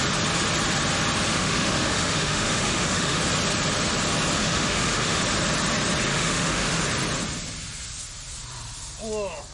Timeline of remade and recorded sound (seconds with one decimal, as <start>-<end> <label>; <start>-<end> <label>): 0.0-1.3 recorded; 1.3-3.2 remade; 3.2-4.4 recorded; 4.4-5.2 remade; 5.2-6.1 recorded; 6.1-6.8 remade; 6.8-9.5 recorded